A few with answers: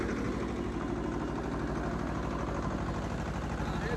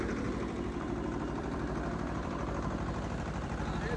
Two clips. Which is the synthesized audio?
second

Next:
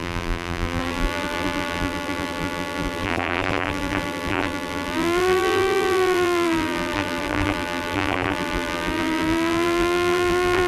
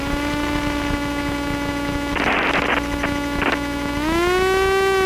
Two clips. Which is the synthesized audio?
first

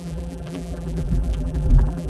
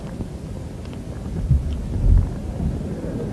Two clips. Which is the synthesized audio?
first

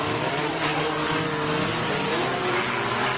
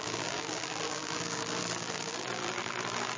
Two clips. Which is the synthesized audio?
second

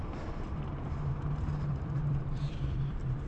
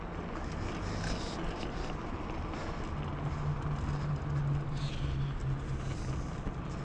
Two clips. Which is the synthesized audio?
first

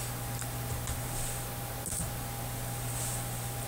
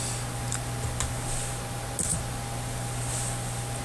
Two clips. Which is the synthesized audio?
first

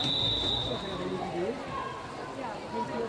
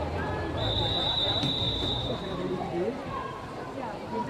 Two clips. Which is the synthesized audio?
second